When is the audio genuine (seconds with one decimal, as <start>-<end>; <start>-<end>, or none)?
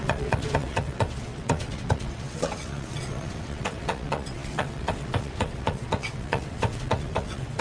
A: none